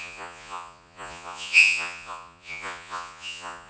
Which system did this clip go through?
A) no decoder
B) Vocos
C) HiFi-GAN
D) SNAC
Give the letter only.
B